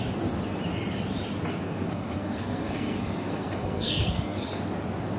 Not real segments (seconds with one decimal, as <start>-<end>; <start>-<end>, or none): 1.5-4.6

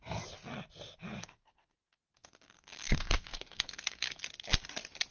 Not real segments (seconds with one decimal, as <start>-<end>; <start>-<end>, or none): 1.1-4.2

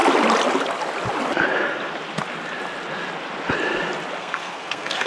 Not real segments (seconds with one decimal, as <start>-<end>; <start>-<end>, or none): 4.2-5.1

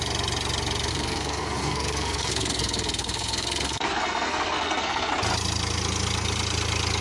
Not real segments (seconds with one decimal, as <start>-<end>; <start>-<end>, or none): 0.9-5.1

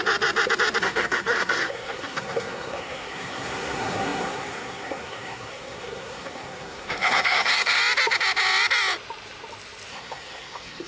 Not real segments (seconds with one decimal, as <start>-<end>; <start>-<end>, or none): 0.8-7.8; 9.9-10.9

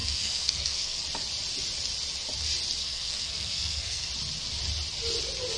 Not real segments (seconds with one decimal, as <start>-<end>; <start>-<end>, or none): 0.0-1.0; 2.8-4.1

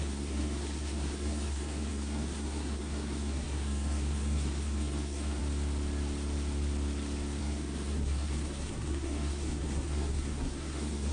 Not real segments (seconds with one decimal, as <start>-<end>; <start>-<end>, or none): 0.0-5.4; 7.4-11.1